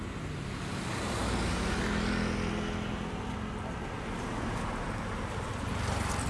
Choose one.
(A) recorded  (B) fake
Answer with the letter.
A